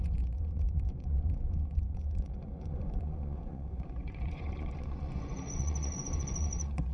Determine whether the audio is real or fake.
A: fake